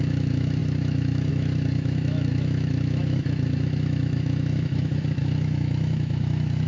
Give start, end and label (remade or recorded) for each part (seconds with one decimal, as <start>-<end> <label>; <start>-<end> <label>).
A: 0.0-6.7 remade